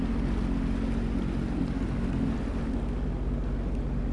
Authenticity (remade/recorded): recorded